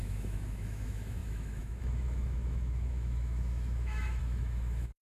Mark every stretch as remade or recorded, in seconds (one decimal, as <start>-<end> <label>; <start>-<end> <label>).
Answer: 0.0-5.0 remade